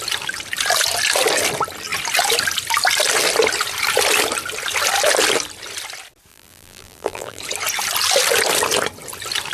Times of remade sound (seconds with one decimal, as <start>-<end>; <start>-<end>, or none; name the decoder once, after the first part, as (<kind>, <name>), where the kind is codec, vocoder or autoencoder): 6.3-7.4 (vocoder, BigVGAN v2)